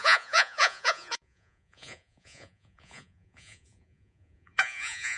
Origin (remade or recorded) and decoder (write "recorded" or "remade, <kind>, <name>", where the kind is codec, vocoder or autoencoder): remade, vocoder, Vocos